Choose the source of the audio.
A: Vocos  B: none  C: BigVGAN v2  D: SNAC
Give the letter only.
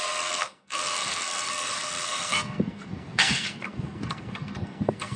D